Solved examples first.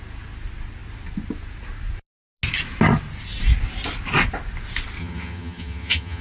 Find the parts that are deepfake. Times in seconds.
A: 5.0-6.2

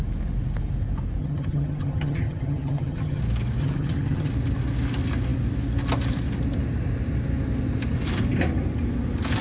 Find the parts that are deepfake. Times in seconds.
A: 1.2-3.2; 3.6-4.3

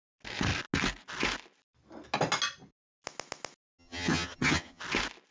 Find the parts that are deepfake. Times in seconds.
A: 3.8-4.8